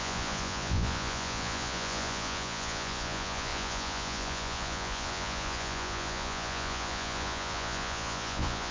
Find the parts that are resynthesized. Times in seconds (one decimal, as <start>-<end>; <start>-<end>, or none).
0.0-8.7